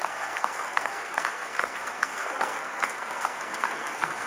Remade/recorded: remade